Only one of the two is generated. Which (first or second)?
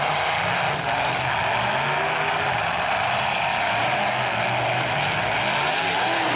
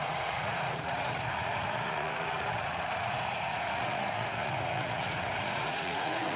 second